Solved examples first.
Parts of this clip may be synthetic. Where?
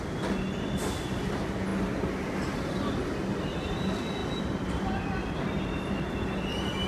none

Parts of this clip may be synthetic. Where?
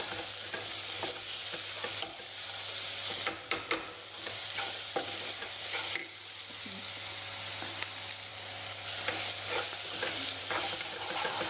none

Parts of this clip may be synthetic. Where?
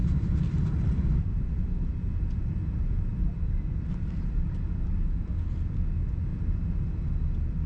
0.0-1.6 (vocoder, BigVGAN v2); 3.1-4.3; 6.3-7.1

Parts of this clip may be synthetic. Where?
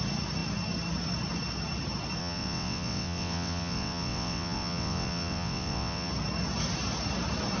2.2-6.1 (vocoder, WaveNeXt)